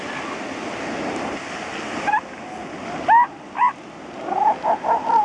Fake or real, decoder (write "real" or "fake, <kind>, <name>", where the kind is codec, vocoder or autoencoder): real